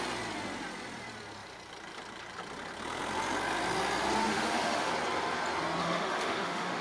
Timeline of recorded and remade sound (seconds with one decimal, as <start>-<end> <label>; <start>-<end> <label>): 0.0-4.2 recorded; 4.2-4.9 remade; 4.9-5.8 recorded; 5.8-6.8 remade